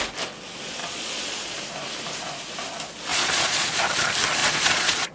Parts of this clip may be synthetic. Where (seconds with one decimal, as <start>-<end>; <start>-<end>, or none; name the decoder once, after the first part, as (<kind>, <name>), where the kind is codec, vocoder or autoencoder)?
0.8-1.6 (vocoder, Vocos); 3.1-3.8; 4.4-5.1